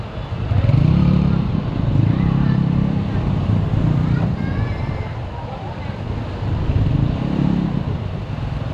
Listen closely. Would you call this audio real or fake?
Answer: fake